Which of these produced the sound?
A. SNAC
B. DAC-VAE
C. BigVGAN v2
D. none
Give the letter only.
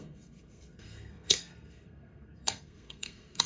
A